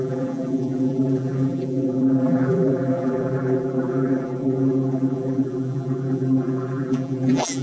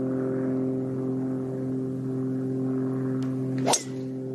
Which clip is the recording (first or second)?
second